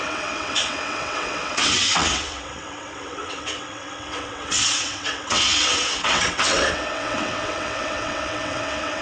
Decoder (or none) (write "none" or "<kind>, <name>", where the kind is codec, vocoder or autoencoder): vocoder, WaveNeXt